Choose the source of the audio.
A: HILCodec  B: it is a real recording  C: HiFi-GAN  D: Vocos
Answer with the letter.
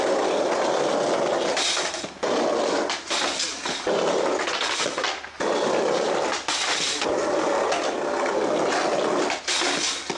B